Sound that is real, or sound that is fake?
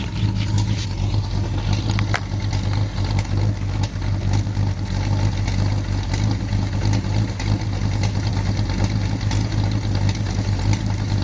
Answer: real